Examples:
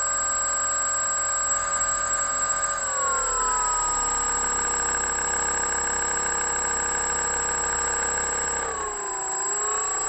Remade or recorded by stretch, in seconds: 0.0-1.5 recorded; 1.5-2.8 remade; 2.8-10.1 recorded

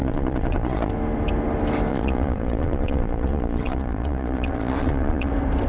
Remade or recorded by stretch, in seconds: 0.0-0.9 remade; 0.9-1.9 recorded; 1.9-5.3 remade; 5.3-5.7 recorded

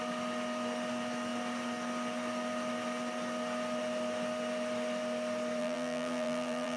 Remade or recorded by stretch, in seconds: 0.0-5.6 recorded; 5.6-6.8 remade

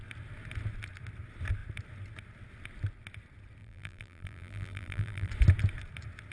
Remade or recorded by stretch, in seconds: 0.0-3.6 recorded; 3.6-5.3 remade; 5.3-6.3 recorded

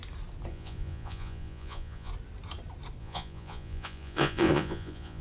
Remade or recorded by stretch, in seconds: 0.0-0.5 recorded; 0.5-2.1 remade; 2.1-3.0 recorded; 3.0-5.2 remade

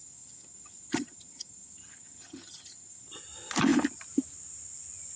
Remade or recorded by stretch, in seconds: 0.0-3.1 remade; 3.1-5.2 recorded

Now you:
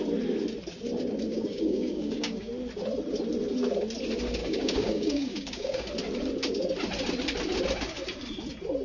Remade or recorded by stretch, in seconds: 0.0-1.3 recorded; 1.3-2.5 remade; 2.5-4.4 recorded; 4.4-5.9 remade; 5.9-8.8 recorded